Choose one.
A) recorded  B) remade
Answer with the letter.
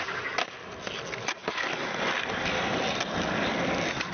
A